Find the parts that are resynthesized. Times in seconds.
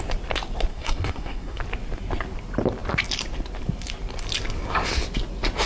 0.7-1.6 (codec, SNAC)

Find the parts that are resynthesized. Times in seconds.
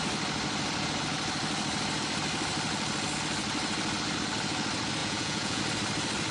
5.0-5.6 (vocoder, Vocos)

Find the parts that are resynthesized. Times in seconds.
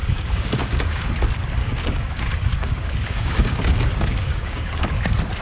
0.0-1.1 (codec, DAC); 1.6-4.8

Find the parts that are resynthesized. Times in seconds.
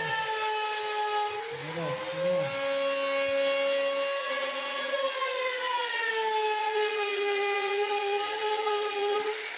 4.2-6.1 (vocoder, Vocos); 6.6-9.6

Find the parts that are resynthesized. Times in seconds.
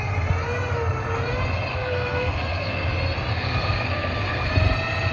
1.7-2.9 (codec, SNAC); 3.3-4.5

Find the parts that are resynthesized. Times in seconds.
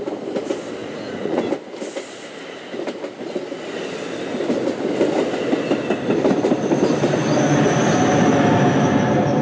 0.8-1.4 (vocoder, Vocos)